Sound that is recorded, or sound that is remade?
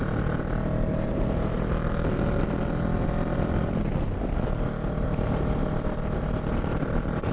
recorded